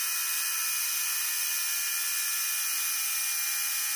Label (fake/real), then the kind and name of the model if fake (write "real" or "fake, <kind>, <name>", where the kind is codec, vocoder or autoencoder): real